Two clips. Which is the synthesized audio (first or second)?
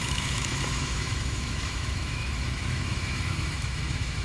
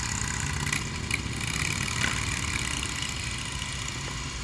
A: first